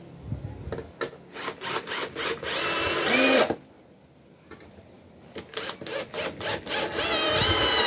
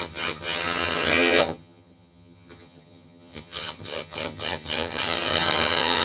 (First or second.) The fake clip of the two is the second